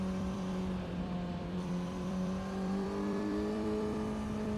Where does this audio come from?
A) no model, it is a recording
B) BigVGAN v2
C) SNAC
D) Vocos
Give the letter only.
B